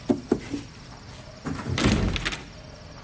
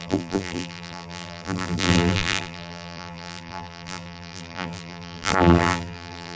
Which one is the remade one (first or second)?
second